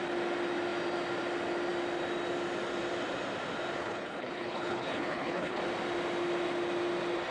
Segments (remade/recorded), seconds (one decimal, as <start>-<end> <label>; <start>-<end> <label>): 0.0-3.8 recorded; 3.8-5.6 remade; 5.6-7.3 recorded